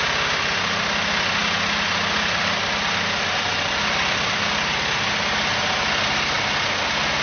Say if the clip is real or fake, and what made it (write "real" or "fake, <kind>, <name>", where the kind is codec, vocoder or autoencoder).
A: real